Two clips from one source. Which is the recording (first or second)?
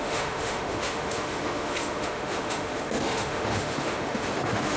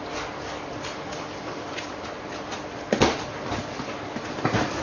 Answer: second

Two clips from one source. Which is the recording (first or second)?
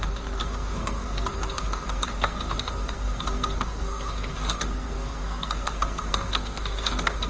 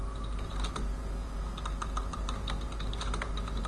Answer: second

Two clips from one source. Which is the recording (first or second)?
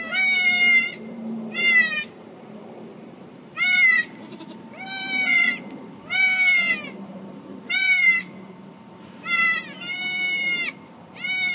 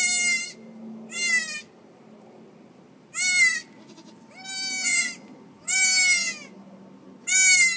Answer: second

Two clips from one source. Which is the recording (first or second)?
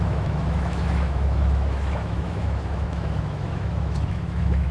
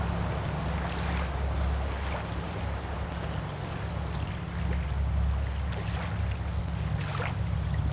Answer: second